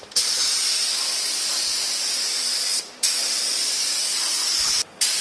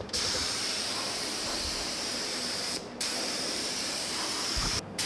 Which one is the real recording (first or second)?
first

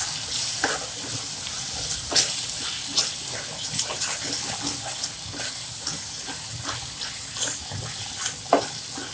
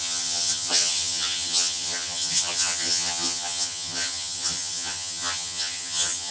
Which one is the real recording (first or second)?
first